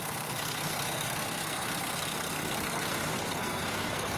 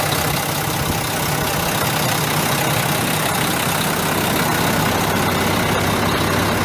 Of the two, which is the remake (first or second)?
first